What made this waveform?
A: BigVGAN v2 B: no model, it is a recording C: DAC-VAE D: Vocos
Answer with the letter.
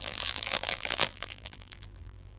A